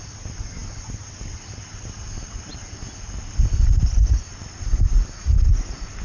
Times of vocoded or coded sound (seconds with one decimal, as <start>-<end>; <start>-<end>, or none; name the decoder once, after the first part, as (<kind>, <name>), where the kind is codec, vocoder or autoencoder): none